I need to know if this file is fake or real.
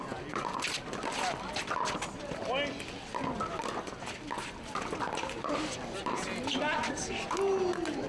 real